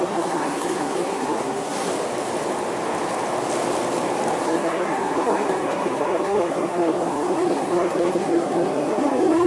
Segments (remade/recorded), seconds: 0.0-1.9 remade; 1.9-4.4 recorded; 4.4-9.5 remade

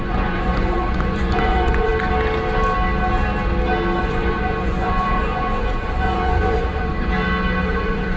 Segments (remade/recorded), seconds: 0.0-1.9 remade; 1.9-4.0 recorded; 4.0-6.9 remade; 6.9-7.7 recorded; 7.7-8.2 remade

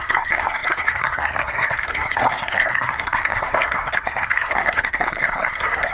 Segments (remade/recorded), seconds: 0.0-5.9 remade

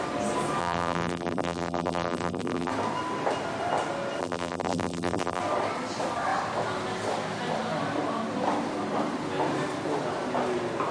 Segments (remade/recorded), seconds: 0.0-0.6 recorded; 0.6-2.7 remade; 2.7-4.2 recorded; 4.2-5.4 remade; 5.4-10.9 recorded

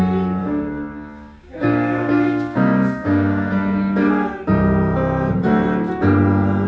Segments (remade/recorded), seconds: 0.0-0.4 recorded; 0.4-4.1 remade; 4.1-6.7 recorded

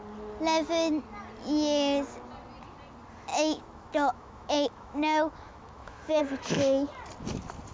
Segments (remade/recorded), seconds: 0.0-3.3 recorded; 3.3-6.2 remade; 6.2-7.7 recorded

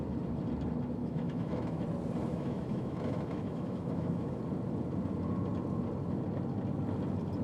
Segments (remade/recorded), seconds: 0.0-1.0 recorded; 1.0-1.8 remade; 1.8-2.3 recorded; 2.3-4.4 remade; 4.4-7.4 recorded

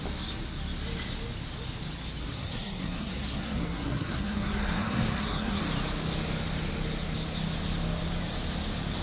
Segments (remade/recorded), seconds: 0.0-2.2 recorded; 2.2-5.6 remade; 5.6-9.0 recorded